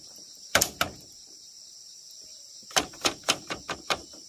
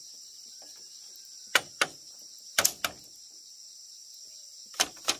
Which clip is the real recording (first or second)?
second